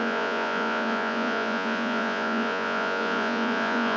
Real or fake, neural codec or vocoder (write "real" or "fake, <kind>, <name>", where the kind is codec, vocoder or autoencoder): fake, vocoder, Vocos